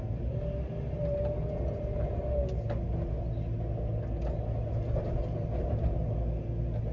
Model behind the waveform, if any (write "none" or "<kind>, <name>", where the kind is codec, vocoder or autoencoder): none